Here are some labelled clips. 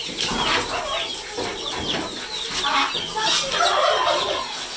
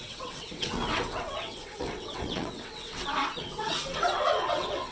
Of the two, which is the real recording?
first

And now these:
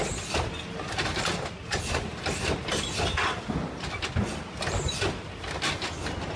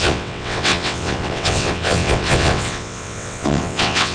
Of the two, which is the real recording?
first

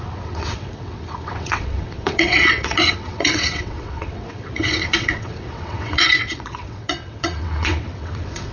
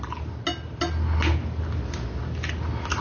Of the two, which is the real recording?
second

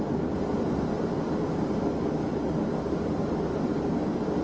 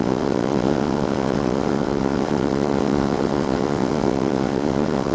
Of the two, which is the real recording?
first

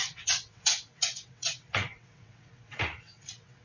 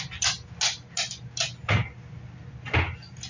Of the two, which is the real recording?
second